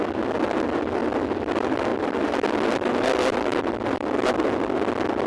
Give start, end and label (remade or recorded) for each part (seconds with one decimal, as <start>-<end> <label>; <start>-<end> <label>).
0.0-1.0 recorded; 1.0-1.5 remade; 1.5-1.9 recorded; 1.9-4.3 remade; 4.3-5.3 recorded